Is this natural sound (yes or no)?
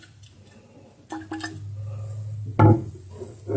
yes